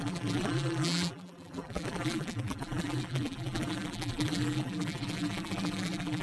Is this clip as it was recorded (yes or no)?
no